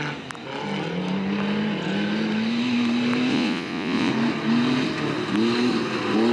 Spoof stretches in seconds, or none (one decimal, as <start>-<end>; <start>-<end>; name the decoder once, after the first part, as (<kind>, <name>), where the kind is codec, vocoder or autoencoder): 3.3-4.1 (vocoder, Vocos)